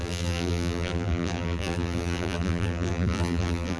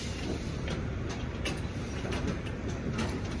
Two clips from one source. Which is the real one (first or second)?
second